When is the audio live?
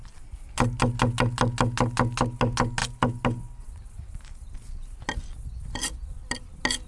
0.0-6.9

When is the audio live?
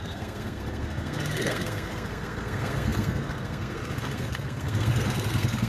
none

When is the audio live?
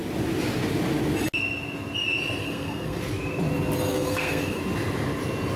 0.0-2.4; 3.0-3.9; 4.6-5.6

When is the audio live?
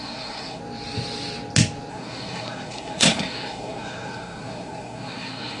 0.6-1.9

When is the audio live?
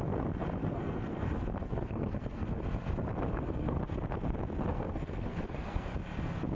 0.0-0.6; 1.2-1.6; 2.6-3.3; 3.8-4.7; 5.9-6.5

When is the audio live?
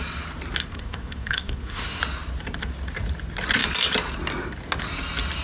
0.0-0.6; 2.0-5.4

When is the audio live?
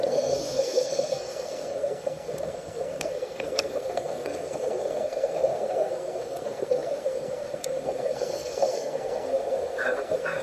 none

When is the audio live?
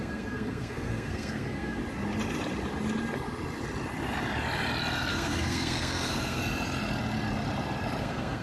1.8-5.1; 6.4-8.0